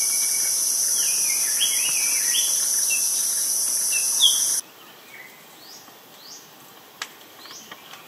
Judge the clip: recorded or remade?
recorded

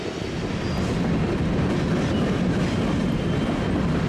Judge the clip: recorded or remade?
recorded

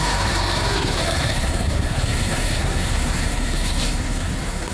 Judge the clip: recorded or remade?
remade